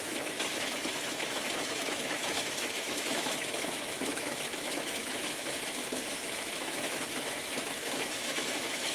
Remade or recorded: remade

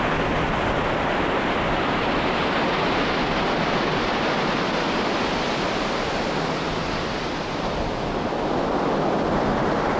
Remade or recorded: recorded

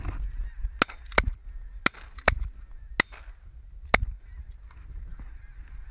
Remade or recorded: recorded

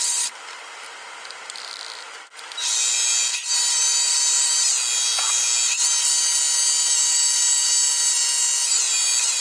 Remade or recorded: recorded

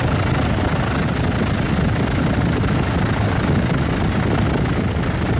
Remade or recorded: recorded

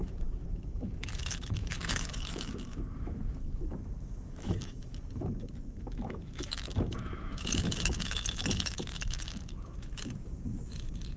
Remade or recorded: remade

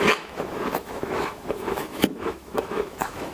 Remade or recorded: remade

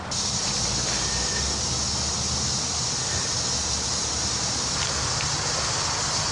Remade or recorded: recorded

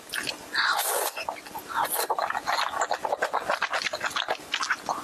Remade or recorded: recorded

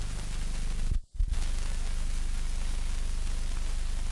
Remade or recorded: recorded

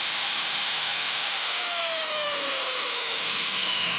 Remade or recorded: remade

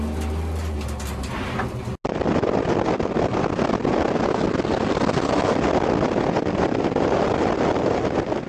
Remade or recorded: recorded